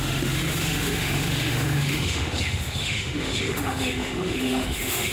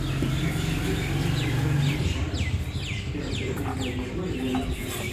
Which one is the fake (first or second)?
first